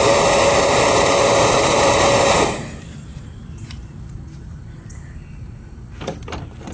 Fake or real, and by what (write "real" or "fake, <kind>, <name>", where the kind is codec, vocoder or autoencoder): fake, vocoder, BigVGAN v2